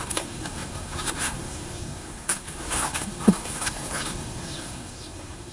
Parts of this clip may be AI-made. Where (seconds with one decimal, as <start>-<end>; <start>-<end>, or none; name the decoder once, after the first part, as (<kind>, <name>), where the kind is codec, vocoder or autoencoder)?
0.0-5.5 (codec, SNAC)